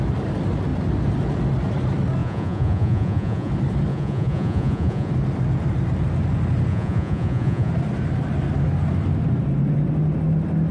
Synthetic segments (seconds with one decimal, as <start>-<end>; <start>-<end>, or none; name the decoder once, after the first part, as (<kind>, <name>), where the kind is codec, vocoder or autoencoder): 2.2-3.5 (vocoder, Vocos); 3.9-5.1; 6.7-7.7